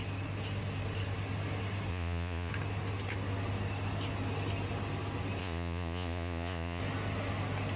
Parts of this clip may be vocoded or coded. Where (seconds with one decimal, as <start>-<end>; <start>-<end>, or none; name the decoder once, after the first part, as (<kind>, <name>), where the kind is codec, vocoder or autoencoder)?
1.9-2.5 (vocoder, Vocos); 5.4-6.8